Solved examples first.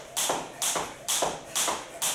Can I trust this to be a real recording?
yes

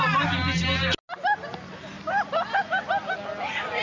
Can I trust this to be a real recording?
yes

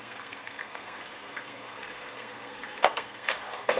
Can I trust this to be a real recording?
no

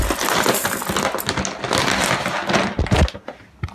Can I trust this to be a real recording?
yes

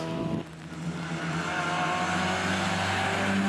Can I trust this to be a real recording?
yes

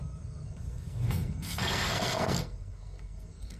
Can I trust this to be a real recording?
no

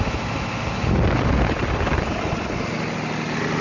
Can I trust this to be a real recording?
yes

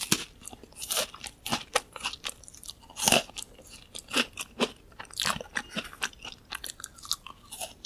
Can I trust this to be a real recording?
yes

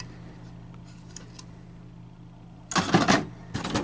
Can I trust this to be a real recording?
yes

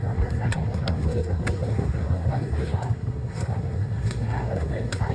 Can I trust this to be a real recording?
no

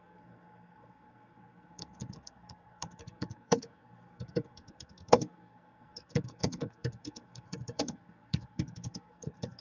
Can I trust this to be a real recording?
no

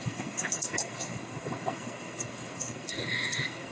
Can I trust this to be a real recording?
no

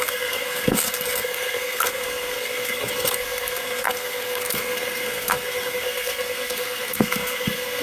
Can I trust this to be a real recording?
no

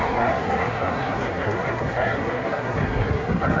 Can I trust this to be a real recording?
no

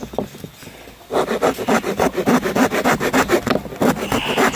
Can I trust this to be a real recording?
yes